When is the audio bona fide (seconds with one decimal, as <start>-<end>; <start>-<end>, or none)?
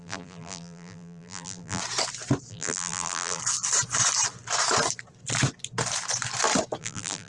1.8-2.5; 3.4-6.8